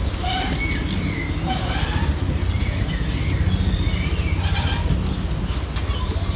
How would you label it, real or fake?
real